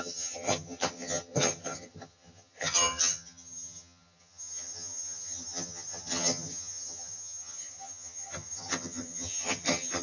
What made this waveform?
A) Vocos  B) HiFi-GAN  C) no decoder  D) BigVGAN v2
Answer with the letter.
B